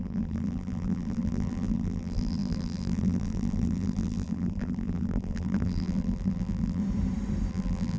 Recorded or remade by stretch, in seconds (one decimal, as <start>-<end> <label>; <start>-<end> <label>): 0.0-6.8 remade; 6.8-7.5 recorded; 7.5-8.0 remade